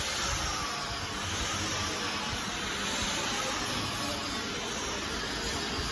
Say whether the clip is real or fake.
real